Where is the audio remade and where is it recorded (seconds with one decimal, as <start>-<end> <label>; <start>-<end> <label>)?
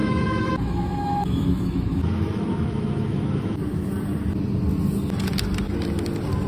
0.0-3.9 remade; 3.9-6.5 recorded